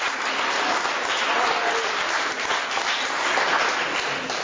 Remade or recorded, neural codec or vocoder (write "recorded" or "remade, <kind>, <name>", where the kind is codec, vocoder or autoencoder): recorded